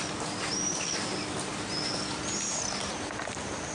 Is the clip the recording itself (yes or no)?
yes